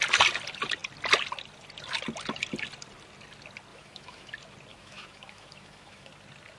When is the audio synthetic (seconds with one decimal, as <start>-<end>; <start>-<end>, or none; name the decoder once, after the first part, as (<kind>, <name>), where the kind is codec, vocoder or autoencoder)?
3.7-4.3 (autoencoder, DAC-VAE); 4.7-6.1